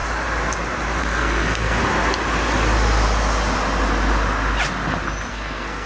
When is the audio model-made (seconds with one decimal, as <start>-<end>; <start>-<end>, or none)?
1.0-1.8; 5.3-5.9

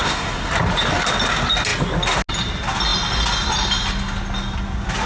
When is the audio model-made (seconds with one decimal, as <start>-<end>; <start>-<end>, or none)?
0.0-0.5

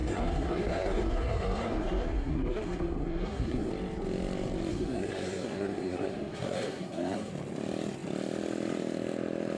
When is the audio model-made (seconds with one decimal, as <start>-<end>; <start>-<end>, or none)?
0.0-3.7; 4.7-7.3

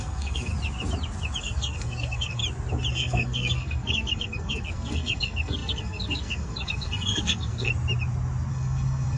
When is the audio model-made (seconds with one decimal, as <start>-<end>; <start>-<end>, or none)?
0.0-0.5; 1.4-2.4; 2.9-7.7; 8.5-9.2